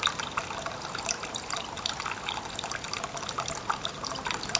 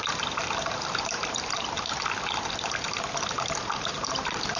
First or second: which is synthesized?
second